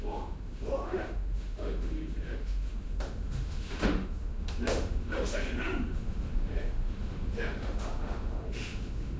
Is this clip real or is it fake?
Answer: fake